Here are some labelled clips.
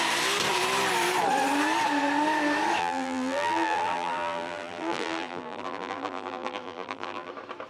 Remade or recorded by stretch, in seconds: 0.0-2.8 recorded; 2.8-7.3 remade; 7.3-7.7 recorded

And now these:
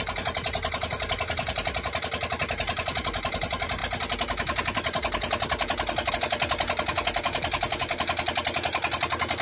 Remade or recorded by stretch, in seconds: 0.0-9.4 recorded

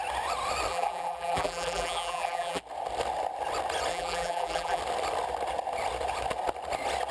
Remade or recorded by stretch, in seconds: 0.0-0.7 recorded; 0.7-2.6 remade; 2.6-3.9 recorded; 3.9-4.8 remade; 4.8-7.1 recorded

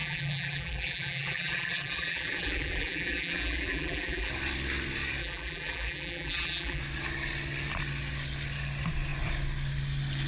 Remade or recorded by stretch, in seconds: 0.0-4.3 remade; 4.3-5.2 recorded; 5.2-6.8 remade; 6.8-10.3 recorded

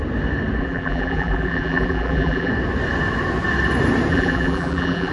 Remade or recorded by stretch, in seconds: 0.0-0.6 recorded; 0.6-2.5 remade; 2.5-4.1 recorded; 4.1-5.1 remade

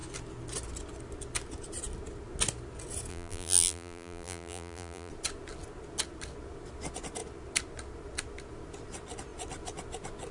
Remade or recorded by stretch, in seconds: 0.0-3.1 recorded; 3.1-5.1 remade; 5.1-10.3 recorded

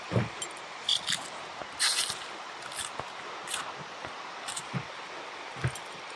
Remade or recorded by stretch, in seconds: 0.0-6.2 recorded

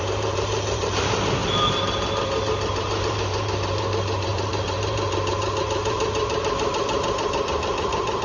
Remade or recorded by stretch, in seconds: 0.0-8.2 remade